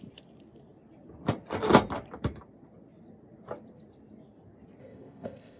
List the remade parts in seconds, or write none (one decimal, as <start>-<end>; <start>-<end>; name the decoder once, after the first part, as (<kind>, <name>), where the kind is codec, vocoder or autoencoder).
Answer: 4.8-5.6 (codec, ZipCodec)